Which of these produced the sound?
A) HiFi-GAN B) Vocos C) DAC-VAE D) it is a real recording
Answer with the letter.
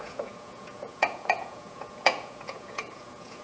B